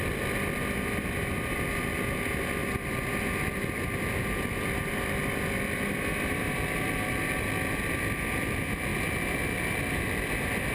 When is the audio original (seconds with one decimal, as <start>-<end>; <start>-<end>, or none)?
0.0-2.6; 7.3-10.7